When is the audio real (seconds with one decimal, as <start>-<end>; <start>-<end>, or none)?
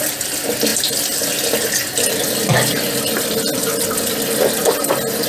0.0-5.3